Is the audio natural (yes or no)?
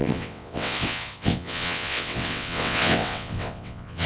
no